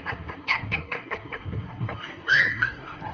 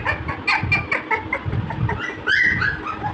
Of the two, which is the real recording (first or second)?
second